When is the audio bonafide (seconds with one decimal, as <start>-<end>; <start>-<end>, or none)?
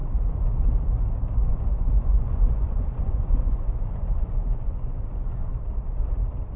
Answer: 0.0-1.5; 5.5-6.6